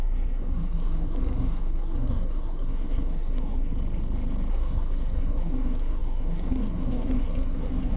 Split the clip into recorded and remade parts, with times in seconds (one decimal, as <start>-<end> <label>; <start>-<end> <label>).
0.0-3.7 remade; 3.7-4.5 recorded; 4.5-8.0 remade